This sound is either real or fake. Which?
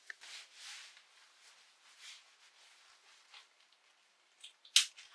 real